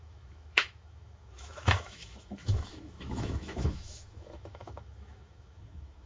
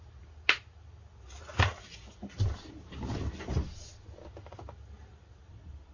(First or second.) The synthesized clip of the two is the first